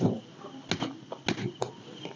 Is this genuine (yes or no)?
yes